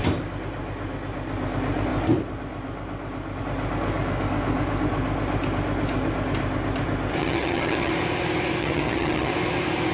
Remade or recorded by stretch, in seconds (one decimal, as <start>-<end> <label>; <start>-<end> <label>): 0.0-7.2 recorded; 7.2-7.9 remade; 7.9-8.6 recorded; 8.6-9.3 remade; 9.3-9.9 recorded